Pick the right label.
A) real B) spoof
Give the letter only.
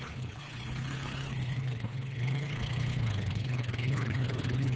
B